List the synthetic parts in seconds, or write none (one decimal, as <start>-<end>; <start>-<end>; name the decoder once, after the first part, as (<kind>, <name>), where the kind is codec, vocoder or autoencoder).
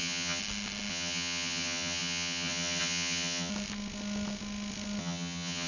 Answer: 0.0-0.4 (vocoder, HiFi-GAN); 0.9-3.5; 5.0-5.7